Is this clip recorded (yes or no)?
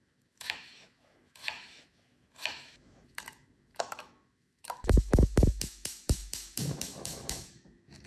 no